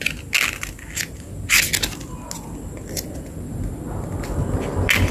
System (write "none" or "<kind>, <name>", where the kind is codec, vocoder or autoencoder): none